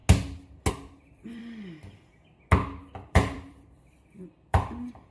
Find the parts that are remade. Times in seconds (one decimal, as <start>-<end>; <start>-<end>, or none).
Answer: 0.7-1.4; 2.9-5.1